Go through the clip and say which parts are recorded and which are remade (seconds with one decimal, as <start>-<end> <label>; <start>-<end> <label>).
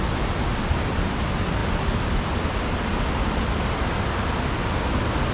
0.0-5.3 recorded